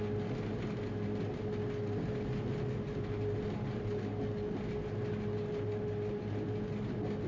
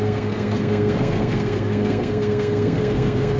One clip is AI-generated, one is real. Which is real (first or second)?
first